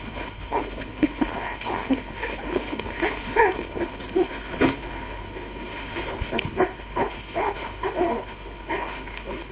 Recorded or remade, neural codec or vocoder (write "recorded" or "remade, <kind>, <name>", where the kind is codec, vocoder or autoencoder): remade, codec, HILCodec